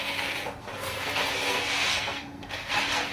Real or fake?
fake